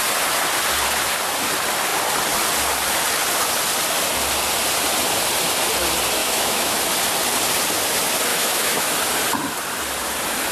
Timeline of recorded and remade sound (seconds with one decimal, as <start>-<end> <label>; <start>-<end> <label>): 0.0-6.2 recorded; 6.2-6.8 remade; 6.8-8.3 recorded; 8.3-8.9 remade; 8.9-10.5 recorded